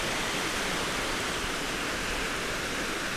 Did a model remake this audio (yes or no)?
no